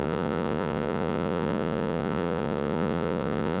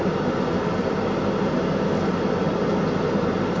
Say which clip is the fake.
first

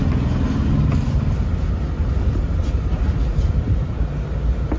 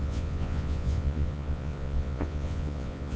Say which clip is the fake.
second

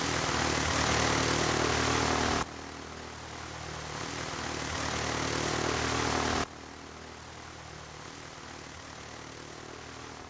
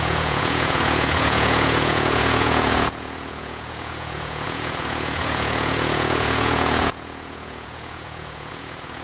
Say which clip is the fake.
second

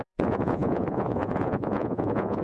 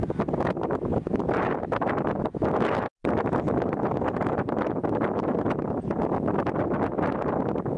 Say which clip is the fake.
first